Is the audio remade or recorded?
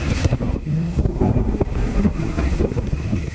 remade